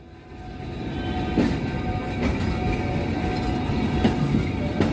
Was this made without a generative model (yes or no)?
yes